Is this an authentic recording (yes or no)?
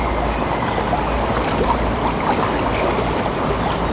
yes